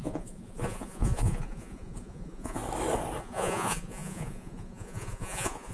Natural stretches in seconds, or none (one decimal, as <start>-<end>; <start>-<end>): 2.6-3.2